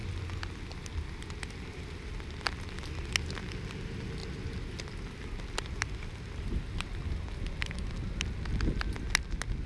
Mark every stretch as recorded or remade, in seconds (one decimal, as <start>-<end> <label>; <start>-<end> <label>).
0.0-9.7 recorded